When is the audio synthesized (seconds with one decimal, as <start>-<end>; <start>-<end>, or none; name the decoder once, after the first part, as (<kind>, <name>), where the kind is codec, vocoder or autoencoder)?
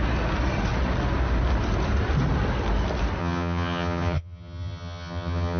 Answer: 3.2-5.6 (vocoder, HiFi-GAN)